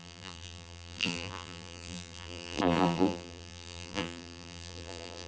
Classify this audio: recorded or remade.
remade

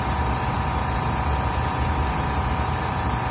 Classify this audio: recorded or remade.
remade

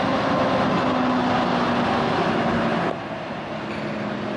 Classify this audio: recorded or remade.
recorded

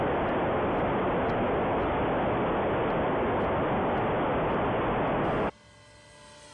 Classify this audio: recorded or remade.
recorded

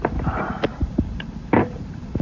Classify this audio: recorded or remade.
remade